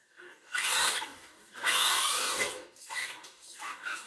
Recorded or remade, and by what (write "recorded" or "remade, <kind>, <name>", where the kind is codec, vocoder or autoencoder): remade, codec, DAC